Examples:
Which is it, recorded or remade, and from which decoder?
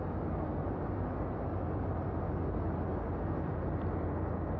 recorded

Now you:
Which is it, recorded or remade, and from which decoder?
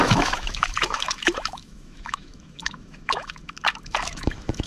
remade, autoencoder, DAC-VAE